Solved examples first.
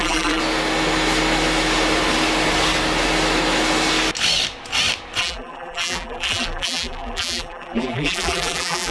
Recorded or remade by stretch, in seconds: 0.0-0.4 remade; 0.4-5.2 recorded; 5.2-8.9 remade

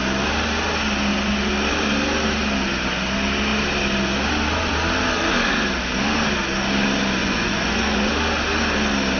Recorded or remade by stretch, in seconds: 0.0-7.2 recorded; 7.2-8.1 remade; 8.1-9.2 recorded